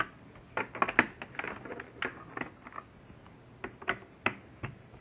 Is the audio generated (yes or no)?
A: no